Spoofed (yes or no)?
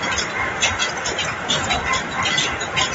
no